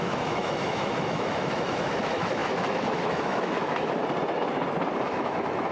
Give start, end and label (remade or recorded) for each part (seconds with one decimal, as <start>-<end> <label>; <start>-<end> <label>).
0.0-4.0 remade; 4.0-5.0 recorded; 5.0-5.7 remade